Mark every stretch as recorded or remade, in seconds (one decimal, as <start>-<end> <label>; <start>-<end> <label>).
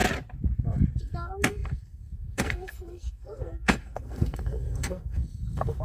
0.0-1.0 recorded; 1.0-5.8 remade